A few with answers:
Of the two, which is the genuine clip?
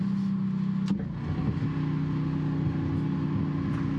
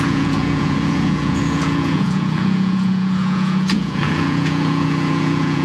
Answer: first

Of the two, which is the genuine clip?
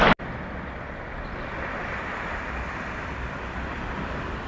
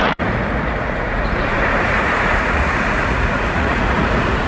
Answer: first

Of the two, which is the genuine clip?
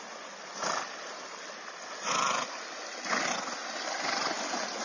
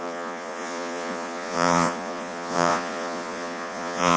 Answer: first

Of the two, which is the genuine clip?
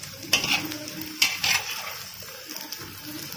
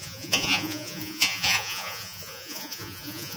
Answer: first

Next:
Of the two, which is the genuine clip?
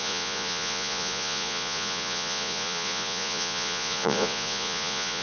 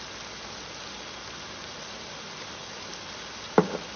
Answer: second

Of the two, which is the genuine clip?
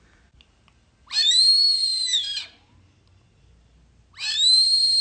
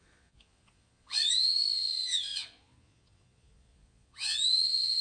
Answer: first